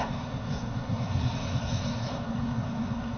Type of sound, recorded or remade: remade